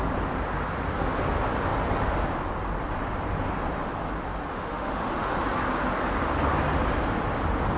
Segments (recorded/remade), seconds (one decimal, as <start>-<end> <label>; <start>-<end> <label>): 0.0-4.5 recorded; 4.5-5.4 remade; 5.4-7.8 recorded

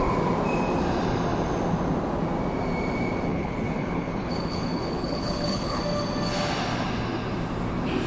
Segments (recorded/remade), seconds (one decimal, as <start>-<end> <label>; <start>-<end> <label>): 0.0-3.3 recorded; 3.3-5.8 remade; 5.8-8.1 recorded